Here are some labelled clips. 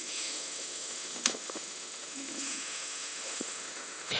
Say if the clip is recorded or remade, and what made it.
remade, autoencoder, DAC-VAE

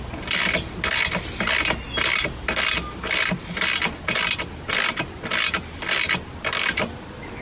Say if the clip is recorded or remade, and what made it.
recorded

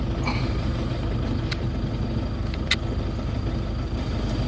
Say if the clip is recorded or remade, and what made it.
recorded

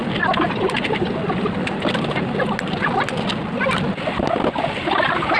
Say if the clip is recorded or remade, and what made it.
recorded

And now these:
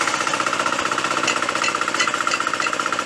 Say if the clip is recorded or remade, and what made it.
remade, vocoder, BigVGAN v2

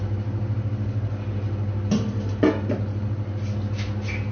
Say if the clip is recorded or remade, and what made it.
recorded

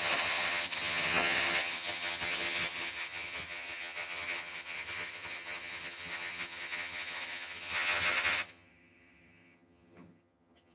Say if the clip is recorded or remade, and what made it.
remade, vocoder, HiFi-GAN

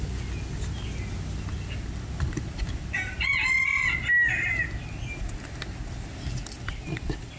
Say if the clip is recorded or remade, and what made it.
recorded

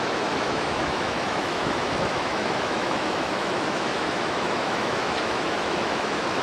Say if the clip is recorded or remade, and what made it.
remade, autoencoder, DAC-VAE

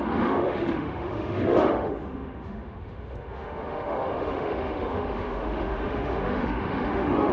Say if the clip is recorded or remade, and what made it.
remade, autoencoder, DAC-VAE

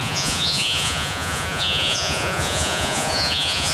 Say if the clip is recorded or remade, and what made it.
remade, vocoder, Vocos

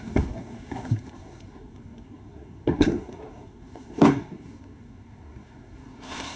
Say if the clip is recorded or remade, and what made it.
remade, codec, SNAC